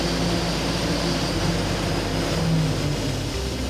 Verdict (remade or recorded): recorded